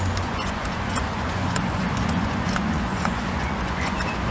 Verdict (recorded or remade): remade